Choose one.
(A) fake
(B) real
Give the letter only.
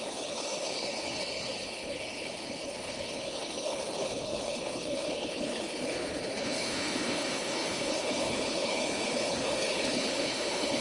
A